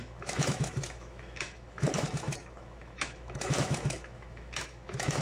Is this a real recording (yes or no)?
no